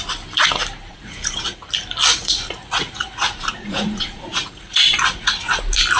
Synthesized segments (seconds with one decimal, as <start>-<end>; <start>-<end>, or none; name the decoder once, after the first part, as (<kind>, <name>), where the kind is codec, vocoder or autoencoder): 0.9-1.7 (vocoder, Vocos); 2.1-5.6